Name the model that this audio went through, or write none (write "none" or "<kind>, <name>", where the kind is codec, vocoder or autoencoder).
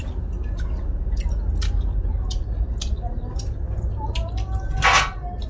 none